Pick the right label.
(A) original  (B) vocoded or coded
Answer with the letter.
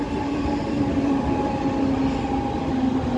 A